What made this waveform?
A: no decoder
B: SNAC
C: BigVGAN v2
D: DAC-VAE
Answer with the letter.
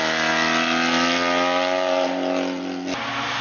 A